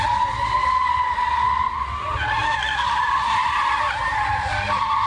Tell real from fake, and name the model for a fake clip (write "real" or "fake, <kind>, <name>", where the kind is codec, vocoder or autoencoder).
real